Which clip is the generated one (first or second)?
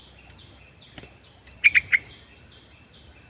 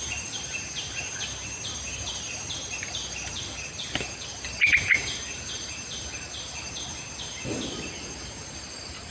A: second